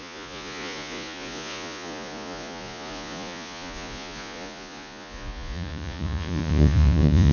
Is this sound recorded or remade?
remade